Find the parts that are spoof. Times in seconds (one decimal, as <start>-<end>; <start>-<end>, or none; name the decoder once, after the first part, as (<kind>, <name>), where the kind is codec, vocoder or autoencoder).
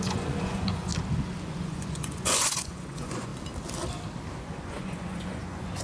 0.0-0.9 (vocoder, Vocos); 1.4-3.3; 4.4-5.8